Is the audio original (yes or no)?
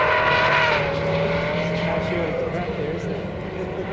yes